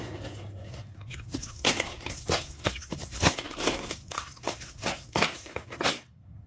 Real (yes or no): no